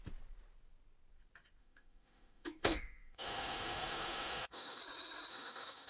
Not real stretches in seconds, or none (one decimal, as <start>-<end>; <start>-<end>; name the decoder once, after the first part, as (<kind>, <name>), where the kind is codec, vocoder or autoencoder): 1.6-4.8 (autoencoder, DAC-VAE); 5.3-5.9